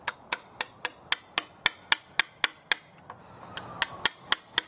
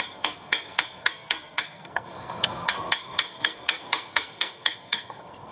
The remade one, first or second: second